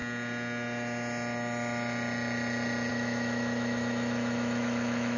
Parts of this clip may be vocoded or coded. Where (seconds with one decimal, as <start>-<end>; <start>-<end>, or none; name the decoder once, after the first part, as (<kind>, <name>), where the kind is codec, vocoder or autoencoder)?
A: 2.9-5.2 (autoencoder, DAC-VAE)